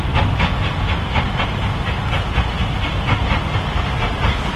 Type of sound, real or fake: real